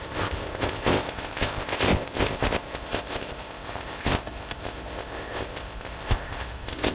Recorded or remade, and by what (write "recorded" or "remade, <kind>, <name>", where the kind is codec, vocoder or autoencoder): remade, codec, ZipCodec